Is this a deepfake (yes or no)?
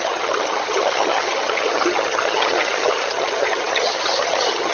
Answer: yes